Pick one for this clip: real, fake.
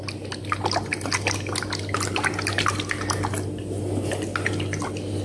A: real